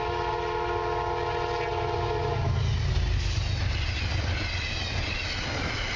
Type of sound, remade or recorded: recorded